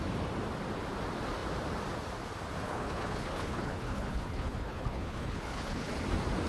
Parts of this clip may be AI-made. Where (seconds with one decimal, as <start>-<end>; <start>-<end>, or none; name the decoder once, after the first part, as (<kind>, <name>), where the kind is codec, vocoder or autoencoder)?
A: 2.6-5.9 (codec, HILCodec)